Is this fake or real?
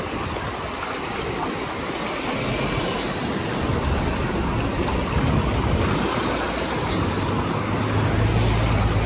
real